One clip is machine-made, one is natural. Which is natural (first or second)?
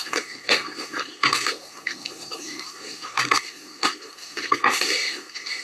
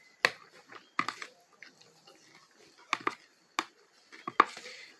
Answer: second